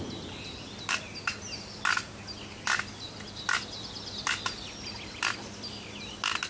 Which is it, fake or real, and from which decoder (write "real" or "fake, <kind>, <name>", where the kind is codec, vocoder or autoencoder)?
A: real